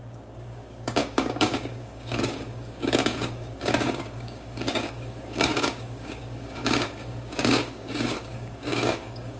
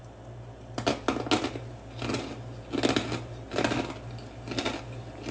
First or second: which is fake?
first